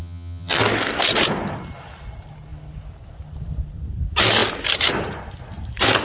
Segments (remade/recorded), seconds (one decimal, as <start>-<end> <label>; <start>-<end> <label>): 0.0-0.6 remade; 0.6-6.0 recorded